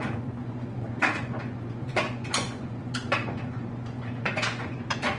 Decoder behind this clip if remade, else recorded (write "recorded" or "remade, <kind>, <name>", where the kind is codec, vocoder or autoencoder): remade, vocoder, Vocos